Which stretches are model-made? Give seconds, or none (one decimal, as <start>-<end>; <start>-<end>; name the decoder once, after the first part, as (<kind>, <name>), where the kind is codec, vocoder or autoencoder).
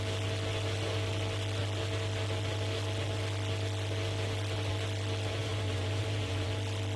5.4-6.5 (vocoder, BigVGAN v2)